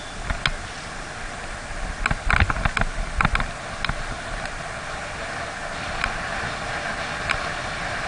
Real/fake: real